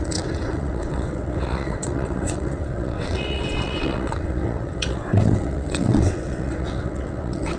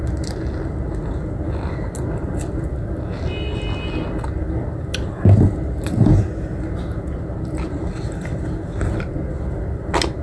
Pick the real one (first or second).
second